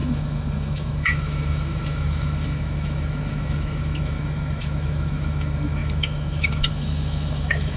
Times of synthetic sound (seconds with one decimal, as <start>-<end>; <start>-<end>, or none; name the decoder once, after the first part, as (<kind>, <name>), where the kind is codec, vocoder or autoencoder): 0.0-7.8 (autoencoder, DAC-VAE)